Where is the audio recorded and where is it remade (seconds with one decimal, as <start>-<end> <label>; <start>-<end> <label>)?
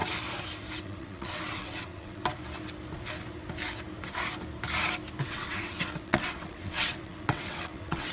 0.0-0.8 recorded; 0.8-2.2 remade; 2.2-5.2 recorded; 5.2-8.1 remade